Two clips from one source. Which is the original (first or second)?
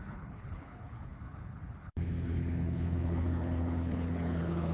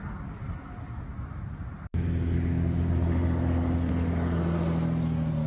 second